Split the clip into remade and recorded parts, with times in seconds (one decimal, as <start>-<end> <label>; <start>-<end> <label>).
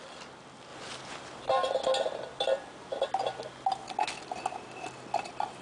0.0-5.6 recorded